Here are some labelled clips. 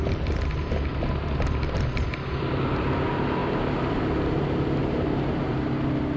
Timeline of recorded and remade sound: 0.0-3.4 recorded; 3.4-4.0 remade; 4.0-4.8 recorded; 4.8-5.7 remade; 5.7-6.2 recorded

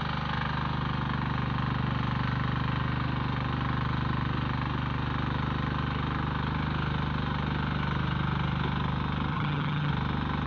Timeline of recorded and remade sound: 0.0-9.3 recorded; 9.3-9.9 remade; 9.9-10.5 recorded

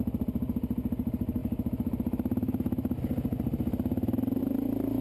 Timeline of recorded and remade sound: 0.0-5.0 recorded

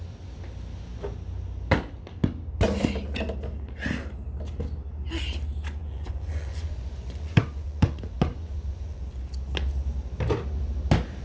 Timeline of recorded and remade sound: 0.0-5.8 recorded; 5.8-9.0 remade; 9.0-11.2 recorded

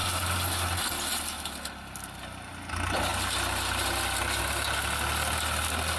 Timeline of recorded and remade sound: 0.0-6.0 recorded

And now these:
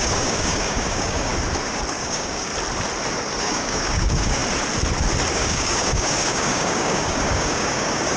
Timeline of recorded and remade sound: 0.0-1.3 remade; 1.3-1.9 recorded; 1.9-2.5 remade; 2.5-3.4 recorded; 3.4-4.4 remade; 4.4-5.3 recorded; 5.3-8.2 remade